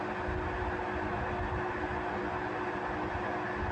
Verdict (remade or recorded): recorded